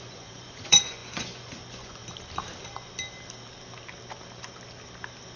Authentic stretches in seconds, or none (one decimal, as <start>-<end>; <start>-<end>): 2.0-5.4